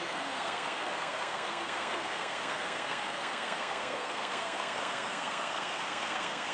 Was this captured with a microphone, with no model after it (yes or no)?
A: no